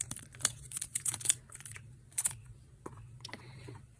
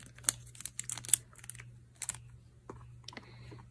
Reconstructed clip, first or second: first